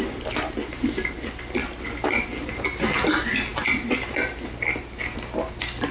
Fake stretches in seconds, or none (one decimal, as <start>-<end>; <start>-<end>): none